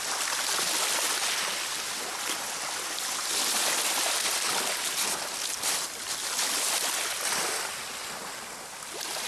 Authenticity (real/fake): real